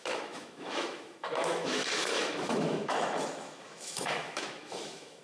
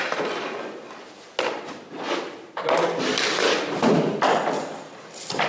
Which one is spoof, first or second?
first